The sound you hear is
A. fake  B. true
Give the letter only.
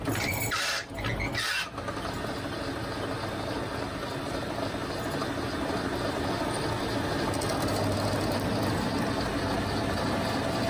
B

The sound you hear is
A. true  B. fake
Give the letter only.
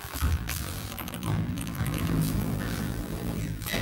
B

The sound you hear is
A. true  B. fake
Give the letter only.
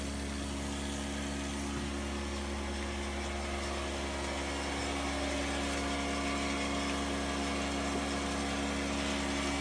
A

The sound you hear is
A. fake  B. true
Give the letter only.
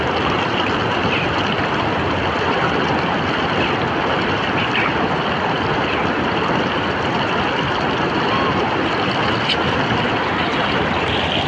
B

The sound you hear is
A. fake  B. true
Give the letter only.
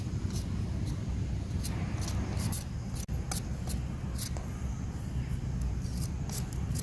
B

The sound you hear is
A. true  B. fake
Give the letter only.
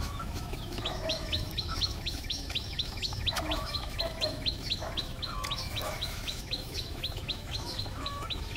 B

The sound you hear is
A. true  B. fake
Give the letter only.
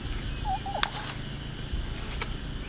A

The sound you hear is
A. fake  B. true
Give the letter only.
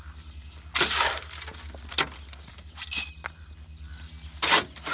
B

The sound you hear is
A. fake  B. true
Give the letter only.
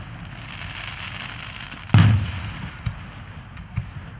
B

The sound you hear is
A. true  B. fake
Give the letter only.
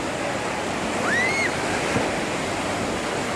A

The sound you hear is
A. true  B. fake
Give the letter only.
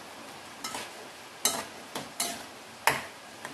A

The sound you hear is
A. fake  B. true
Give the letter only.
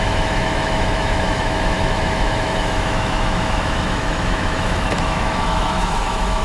A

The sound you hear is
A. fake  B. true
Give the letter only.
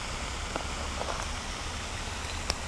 B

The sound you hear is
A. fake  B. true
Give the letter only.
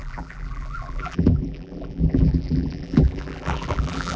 A